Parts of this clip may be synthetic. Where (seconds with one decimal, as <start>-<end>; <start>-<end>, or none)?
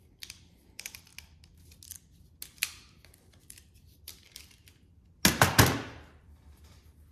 0.0-1.1; 3.4-4.6; 6.2-7.1